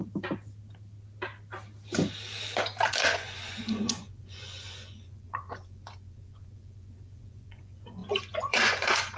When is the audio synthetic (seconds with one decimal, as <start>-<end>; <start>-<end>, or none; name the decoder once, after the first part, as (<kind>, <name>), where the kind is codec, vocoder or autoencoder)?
2.9-9.2 (vocoder, Vocos)